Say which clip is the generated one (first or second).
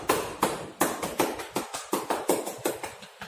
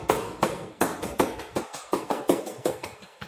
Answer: second